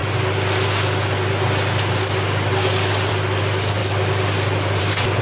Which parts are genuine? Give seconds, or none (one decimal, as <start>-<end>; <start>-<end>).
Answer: 0.0-5.2